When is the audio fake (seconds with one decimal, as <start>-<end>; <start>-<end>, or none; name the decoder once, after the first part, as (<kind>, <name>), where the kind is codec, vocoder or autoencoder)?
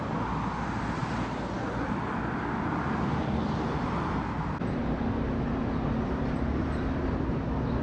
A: none